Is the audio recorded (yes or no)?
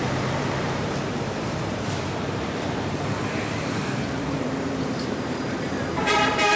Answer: no